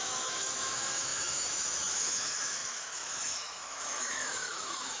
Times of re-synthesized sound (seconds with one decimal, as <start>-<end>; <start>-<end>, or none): 0.0-5.0